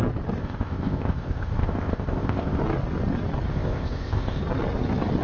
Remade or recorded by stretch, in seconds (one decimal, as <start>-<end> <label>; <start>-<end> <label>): 0.0-0.4 recorded; 0.4-2.6 remade; 2.6-3.5 recorded; 3.5-4.4 remade; 4.4-5.2 recorded